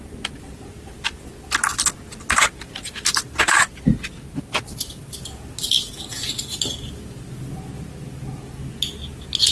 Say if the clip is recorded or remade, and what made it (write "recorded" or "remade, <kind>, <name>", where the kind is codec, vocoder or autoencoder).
recorded